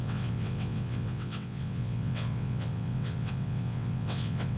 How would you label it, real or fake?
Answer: fake